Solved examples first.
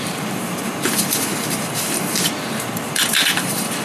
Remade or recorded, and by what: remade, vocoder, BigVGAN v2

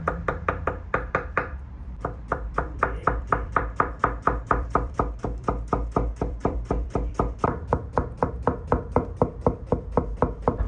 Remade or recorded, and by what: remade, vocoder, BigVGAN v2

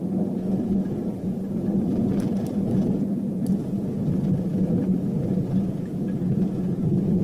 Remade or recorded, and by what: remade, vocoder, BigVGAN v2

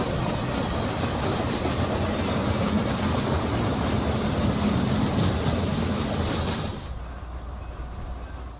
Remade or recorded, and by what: recorded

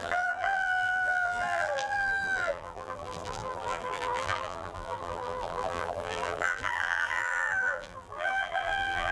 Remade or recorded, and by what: remade, vocoder, BigVGAN v2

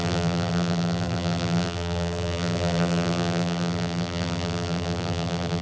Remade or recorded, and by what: remade, vocoder, BigVGAN v2